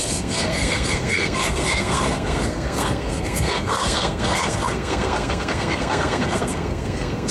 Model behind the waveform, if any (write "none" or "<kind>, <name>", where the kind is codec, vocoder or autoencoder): codec, SNAC